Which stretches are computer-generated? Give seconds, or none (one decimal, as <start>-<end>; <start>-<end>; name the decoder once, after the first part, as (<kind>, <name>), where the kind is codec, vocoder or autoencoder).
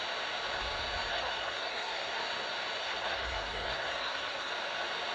1.1-2.2 (codec, SNAC); 2.8-4.5